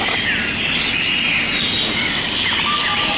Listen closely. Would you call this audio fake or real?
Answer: real